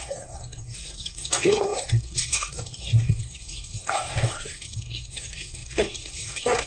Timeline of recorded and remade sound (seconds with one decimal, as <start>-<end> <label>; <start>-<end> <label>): 0.0-6.7 remade